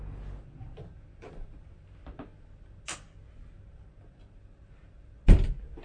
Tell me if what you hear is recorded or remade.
recorded